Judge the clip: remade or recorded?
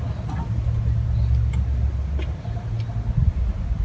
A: recorded